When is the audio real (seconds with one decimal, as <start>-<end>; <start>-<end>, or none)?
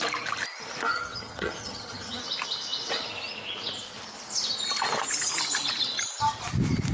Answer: 0.0-0.9; 2.2-6.9